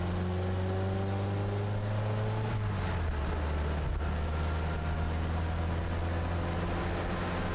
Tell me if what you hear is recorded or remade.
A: recorded